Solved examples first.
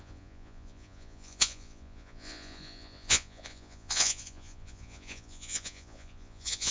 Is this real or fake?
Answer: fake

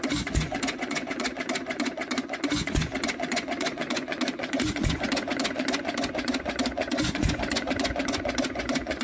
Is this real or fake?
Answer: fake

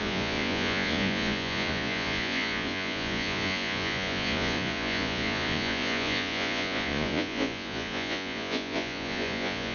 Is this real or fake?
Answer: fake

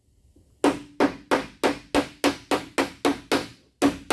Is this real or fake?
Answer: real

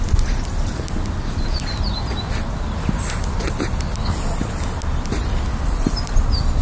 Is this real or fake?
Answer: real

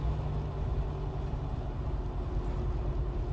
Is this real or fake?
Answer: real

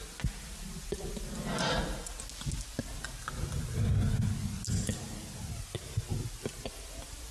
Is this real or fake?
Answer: real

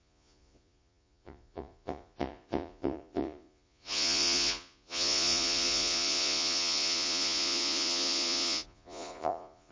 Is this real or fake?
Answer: fake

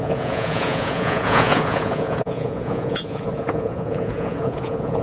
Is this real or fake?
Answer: fake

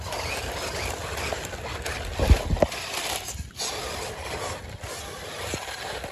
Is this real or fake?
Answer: real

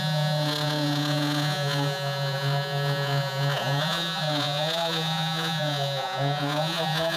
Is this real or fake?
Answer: fake